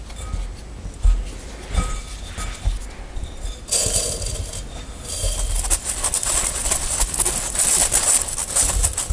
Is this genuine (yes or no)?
yes